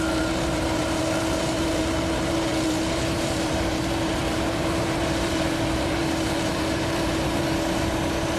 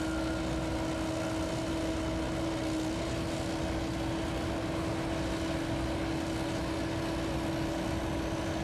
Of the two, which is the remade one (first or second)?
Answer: first